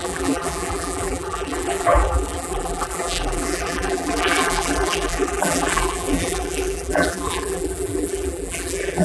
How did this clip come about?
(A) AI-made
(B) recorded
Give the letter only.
A